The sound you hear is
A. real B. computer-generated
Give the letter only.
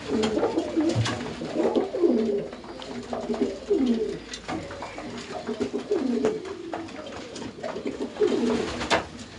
A